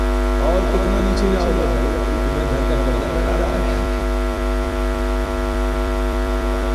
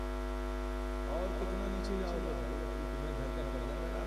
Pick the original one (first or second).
second